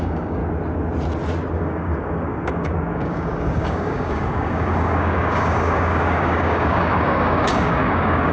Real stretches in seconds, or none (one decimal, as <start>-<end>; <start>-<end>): 0.4-1.5